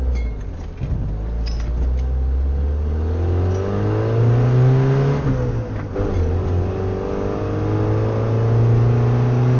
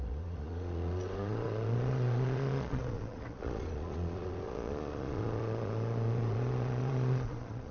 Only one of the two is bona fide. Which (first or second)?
first